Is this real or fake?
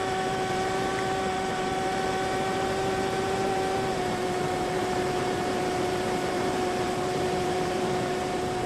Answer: fake